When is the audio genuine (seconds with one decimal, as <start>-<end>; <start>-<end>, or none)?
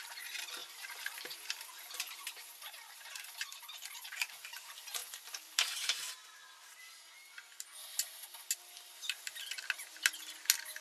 0.0-0.6; 4.6-5.0; 6.1-10.8